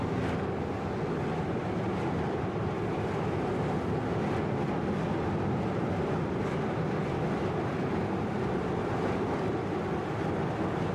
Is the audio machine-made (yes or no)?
no